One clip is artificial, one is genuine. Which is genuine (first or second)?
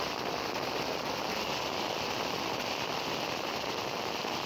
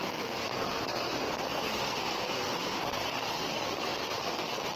first